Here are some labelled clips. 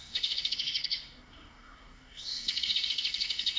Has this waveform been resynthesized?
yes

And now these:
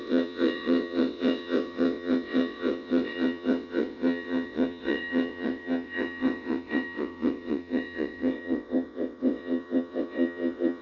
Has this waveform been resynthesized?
yes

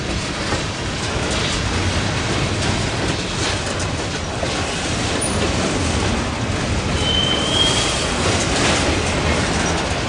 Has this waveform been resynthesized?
yes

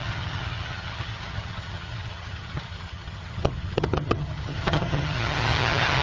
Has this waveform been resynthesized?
yes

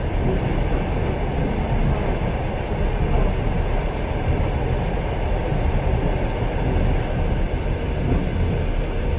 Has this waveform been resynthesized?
no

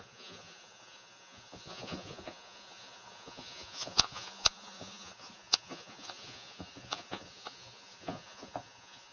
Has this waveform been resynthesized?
yes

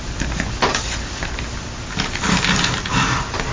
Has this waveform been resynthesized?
no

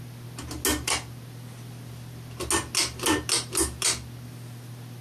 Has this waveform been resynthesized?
no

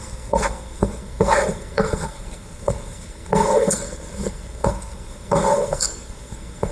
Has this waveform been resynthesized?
yes